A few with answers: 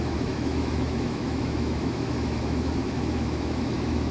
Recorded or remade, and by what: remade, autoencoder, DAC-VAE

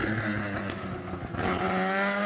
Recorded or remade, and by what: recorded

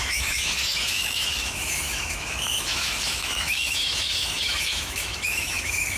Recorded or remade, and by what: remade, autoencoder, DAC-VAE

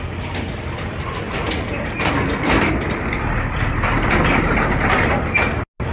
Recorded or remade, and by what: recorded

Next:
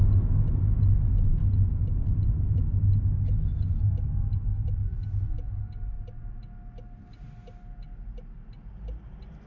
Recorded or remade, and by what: recorded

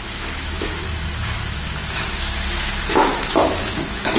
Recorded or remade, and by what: remade, autoencoder, DAC-VAE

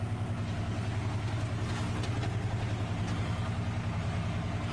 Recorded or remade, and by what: recorded